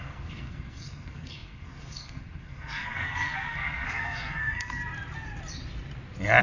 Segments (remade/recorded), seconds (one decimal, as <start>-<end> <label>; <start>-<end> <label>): 0.0-4.8 remade; 4.8-6.4 recorded